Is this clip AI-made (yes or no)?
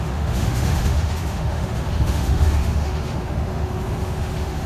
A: yes